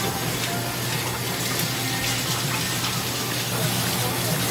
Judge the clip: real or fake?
real